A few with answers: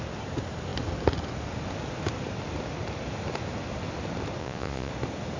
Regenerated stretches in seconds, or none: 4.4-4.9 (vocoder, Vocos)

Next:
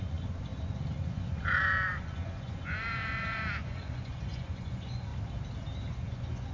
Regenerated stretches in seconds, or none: 0.0-5.1 (vocoder, Vocos); 5.9-6.5

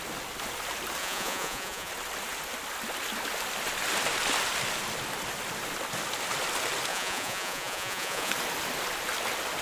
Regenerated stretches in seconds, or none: 1.0-1.9 (vocoder, Vocos); 6.9-8.3

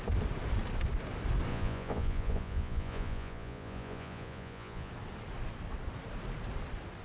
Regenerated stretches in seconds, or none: 1.5-4.9 (vocoder, Vocos)

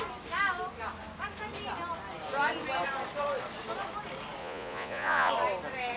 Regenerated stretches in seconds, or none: 4.4-5.3 (vocoder, Vocos)